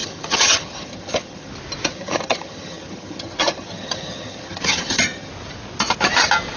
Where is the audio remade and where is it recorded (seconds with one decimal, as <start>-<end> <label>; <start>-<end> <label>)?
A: 0.0-1.5 remade; 1.5-1.9 recorded; 1.9-5.3 remade; 5.3-6.6 recorded